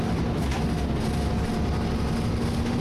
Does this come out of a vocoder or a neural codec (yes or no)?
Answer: no